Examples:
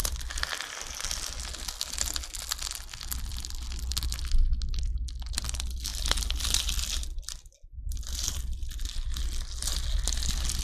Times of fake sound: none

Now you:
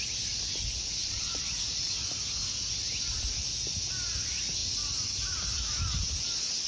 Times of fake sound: 1.0-1.5 (vocoder, Vocos)